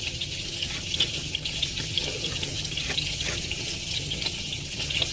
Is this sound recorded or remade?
remade